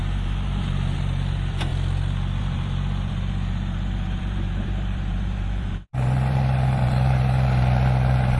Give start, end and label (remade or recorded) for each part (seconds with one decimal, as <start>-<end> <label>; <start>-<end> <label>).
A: 0.0-1.7 remade; 1.7-2.4 recorded; 2.4-8.4 remade